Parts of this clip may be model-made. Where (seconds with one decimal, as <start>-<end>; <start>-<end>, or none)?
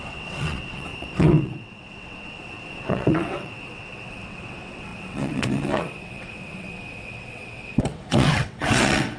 0.0-9.2